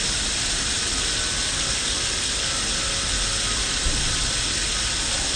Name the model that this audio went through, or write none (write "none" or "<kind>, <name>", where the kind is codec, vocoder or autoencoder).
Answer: none